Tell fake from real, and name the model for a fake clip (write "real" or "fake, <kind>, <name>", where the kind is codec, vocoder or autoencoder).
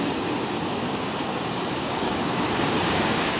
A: fake, codec, DAC